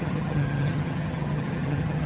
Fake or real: fake